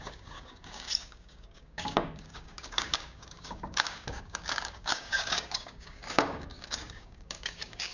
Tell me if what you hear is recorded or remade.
remade